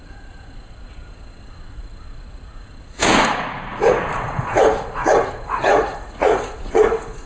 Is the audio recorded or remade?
remade